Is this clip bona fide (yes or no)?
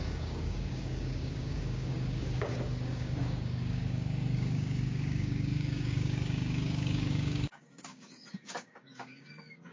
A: no